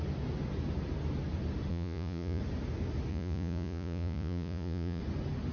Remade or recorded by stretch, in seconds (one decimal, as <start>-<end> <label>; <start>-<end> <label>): 0.0-1.7 recorded; 1.7-2.4 remade; 2.4-3.1 recorded; 3.1-5.0 remade; 5.0-5.5 recorded